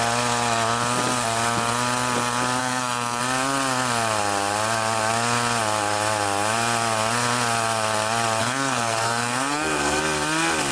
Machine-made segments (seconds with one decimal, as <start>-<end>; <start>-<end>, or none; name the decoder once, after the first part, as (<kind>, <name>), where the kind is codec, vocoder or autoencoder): 2.6-3.2 (codec, SNAC); 8.4-10.0